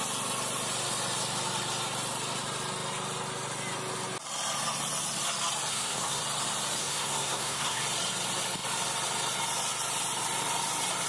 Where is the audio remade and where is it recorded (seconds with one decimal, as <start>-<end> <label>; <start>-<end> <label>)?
0.0-5.7 recorded; 5.7-6.2 remade; 6.2-6.8 recorded; 6.8-7.8 remade; 7.8-11.1 recorded